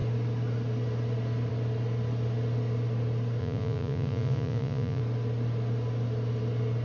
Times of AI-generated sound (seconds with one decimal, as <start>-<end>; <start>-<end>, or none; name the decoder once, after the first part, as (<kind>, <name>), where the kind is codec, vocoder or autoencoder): 3.4-5.0 (vocoder, Vocos)

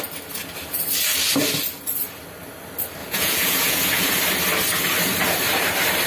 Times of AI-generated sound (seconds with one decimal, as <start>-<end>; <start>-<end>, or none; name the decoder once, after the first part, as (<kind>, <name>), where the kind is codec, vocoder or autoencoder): 3.0-4.1 (vocoder, Vocos)

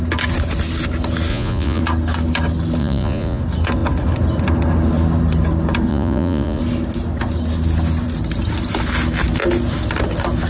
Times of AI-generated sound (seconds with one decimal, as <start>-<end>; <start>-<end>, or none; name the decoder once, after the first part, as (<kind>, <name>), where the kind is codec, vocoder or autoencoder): 1.3-1.8 (vocoder, Vocos); 2.8-3.4; 5.9-6.6